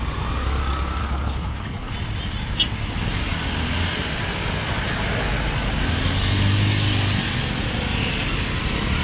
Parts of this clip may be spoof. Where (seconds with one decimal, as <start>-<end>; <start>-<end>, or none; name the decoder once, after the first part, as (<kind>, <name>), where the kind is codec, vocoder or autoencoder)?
1.0-1.9 (codec, HILCodec)